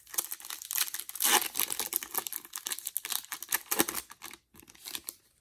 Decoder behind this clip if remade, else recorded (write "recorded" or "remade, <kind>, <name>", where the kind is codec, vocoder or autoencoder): recorded